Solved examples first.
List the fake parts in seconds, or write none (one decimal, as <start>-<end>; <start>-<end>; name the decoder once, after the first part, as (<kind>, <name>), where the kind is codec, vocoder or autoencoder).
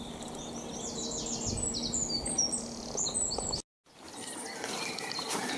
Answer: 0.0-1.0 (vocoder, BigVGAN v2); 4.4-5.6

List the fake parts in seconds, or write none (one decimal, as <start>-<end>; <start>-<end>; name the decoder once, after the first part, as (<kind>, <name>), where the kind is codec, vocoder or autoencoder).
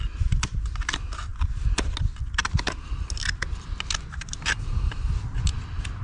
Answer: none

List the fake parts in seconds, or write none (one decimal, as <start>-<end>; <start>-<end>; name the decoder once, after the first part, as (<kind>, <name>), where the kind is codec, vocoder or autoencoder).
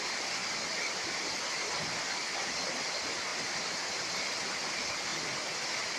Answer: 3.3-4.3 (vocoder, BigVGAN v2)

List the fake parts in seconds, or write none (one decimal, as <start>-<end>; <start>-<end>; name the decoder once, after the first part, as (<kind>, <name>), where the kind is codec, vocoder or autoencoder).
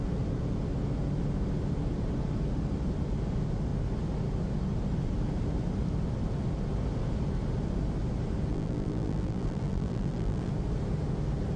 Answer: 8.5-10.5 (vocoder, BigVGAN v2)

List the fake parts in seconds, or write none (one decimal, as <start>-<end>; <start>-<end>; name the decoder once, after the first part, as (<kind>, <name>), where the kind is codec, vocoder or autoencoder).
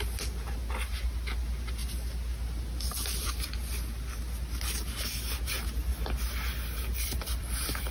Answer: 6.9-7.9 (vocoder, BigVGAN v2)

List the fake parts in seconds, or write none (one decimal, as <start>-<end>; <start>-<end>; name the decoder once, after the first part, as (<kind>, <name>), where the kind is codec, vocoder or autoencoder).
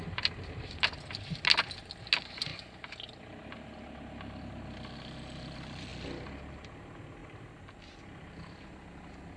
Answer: none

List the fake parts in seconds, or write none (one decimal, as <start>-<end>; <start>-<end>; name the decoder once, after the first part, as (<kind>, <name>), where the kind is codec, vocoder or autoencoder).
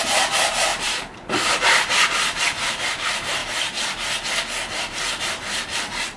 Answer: 0.0-3.4 (vocoder, BigVGAN v2); 5.2-6.2